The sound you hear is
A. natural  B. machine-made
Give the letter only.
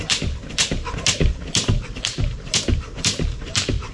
B